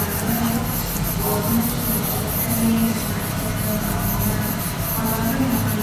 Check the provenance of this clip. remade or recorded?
recorded